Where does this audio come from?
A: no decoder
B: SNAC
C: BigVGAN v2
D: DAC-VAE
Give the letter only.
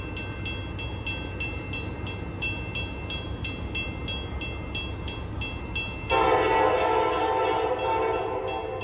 A